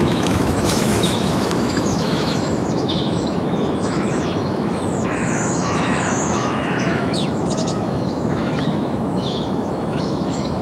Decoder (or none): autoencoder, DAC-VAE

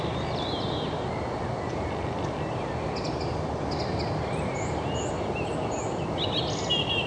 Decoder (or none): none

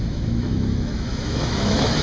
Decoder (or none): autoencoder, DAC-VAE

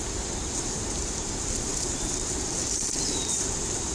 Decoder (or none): none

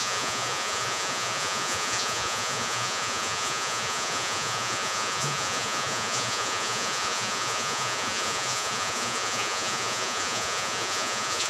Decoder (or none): vocoder, Vocos